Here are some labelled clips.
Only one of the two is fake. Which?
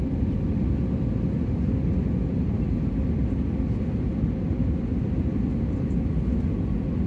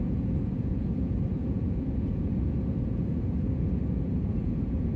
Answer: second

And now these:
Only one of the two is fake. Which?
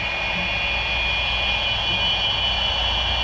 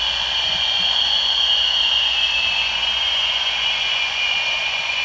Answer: second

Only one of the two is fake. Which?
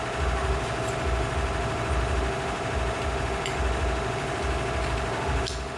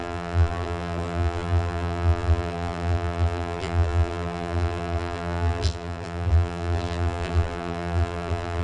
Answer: second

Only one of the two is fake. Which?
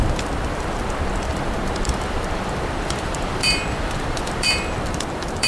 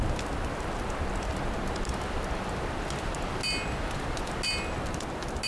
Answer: first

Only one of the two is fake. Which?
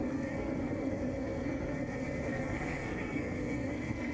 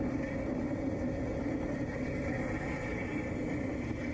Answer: first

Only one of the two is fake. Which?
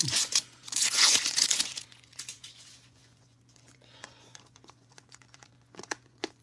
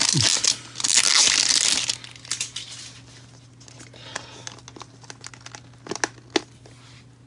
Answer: first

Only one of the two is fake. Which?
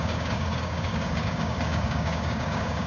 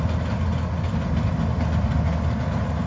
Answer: first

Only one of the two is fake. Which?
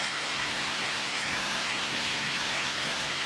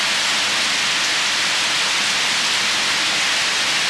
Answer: first